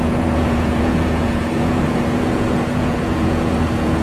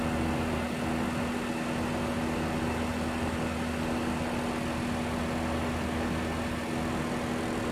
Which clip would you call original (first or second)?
second